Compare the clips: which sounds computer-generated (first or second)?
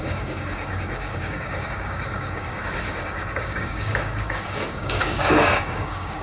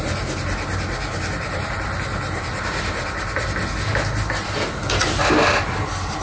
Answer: first